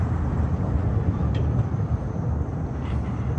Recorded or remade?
remade